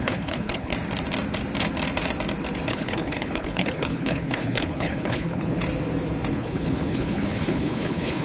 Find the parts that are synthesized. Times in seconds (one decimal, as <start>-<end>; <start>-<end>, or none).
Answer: 0.0-0.7; 2.7-5.6; 6.3-8.2